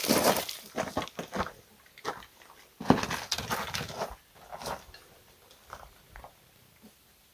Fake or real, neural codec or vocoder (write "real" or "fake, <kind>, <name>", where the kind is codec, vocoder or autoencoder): real